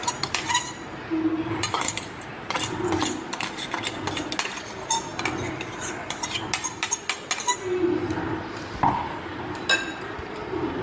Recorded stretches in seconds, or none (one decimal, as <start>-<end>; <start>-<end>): 0.0-0.9; 2.3-10.8